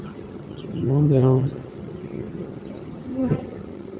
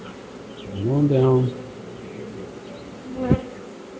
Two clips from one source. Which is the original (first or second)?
second